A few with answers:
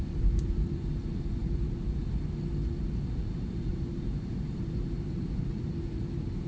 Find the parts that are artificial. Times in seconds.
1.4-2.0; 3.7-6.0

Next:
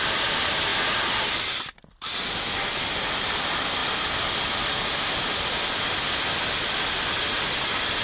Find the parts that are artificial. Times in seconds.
none